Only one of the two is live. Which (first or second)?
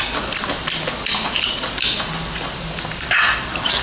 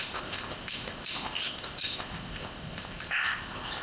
first